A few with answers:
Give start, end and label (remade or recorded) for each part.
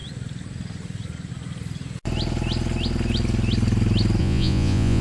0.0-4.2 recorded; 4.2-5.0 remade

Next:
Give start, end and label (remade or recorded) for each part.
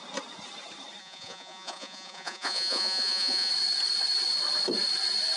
0.0-1.0 recorded; 1.0-3.5 remade; 3.5-5.4 recorded